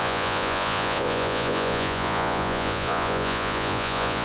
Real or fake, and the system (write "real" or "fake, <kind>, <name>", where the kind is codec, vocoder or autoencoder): fake, vocoder, Vocos